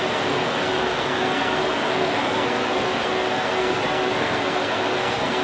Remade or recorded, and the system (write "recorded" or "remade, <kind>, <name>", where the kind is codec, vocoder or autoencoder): remade, codec, SNAC